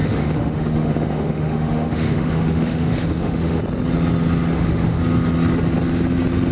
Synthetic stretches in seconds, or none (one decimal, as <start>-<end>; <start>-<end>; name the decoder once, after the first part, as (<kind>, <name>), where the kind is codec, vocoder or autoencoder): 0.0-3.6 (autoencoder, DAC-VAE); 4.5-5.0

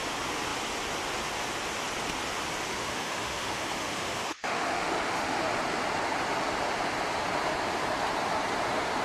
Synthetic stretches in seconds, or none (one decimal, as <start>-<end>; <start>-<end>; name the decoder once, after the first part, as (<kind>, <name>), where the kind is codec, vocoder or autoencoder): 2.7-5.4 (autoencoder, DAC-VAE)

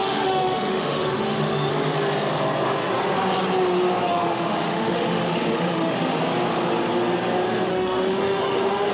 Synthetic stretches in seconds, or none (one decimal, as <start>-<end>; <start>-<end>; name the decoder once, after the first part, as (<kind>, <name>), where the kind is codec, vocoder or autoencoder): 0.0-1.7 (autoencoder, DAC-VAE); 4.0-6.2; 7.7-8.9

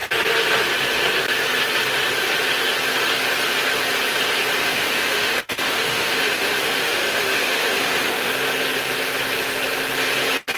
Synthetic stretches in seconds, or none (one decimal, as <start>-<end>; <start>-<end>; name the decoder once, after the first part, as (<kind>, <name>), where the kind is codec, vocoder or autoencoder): 4.6-8.3 (autoencoder, DAC-VAE)

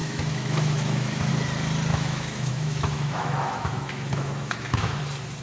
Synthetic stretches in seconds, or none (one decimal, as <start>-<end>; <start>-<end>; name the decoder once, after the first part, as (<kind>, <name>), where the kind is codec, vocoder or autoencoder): 0.0-1.3 (autoencoder, DAC-VAE); 1.9-5.0

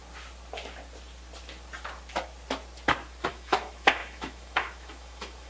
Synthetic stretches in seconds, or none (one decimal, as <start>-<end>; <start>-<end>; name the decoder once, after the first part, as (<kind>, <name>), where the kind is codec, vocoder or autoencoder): 3.3-5.5 (autoencoder, DAC-VAE)

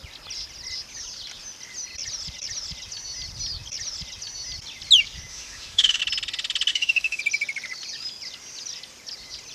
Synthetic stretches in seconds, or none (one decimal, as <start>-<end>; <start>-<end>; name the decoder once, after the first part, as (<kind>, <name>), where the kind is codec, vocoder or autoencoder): 5.3-6.0 (autoencoder, DAC-VAE); 6.7-7.2